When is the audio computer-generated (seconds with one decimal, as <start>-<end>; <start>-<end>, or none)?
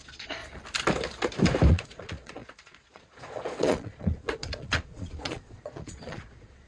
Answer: 0.0-0.4; 1.7-6.7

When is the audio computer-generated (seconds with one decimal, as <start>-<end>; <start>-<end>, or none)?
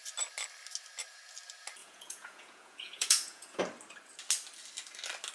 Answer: 1.8-3.6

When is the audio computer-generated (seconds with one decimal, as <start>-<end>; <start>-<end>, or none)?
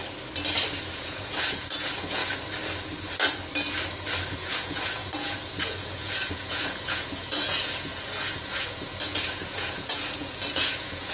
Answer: 0.9-2.2; 4.3-11.1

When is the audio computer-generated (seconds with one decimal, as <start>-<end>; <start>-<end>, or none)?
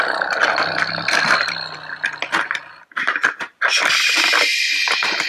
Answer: none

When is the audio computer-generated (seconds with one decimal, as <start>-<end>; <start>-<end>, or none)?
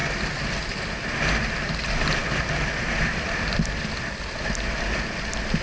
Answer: none